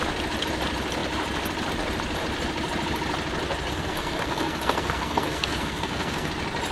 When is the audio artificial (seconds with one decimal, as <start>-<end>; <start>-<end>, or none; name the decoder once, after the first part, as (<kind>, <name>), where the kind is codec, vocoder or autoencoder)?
3.7-6.3 (codec, SNAC)